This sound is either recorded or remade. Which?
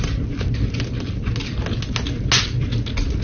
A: recorded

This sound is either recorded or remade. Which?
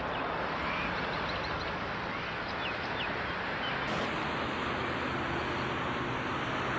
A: recorded